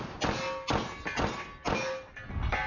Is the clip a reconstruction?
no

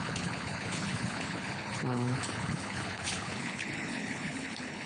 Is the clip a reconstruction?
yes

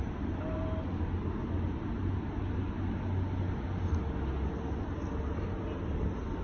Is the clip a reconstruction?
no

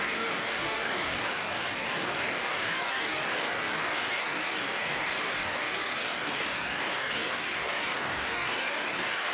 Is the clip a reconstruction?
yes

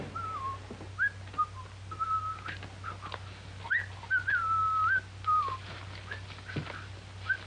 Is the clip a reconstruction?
no